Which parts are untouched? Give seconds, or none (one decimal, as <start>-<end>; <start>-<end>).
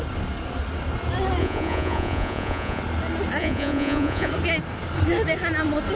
0.0-1.4; 2.8-3.4; 4.3-6.0